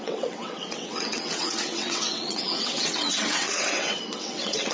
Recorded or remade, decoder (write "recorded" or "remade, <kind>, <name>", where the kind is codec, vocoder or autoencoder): remade, vocoder, WaveNeXt